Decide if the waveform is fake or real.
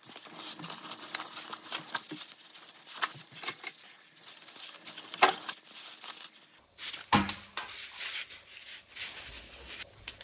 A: real